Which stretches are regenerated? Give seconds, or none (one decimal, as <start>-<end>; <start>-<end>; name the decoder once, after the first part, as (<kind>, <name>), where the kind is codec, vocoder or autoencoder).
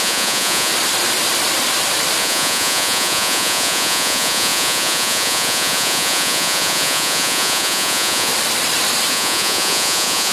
0.0-0.7 (vocoder, Vocos); 2.2-8.3; 9.1-10.3